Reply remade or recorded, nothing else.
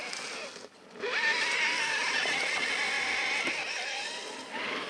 recorded